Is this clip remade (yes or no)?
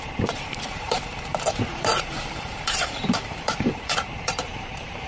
yes